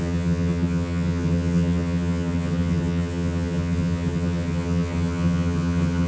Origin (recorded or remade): remade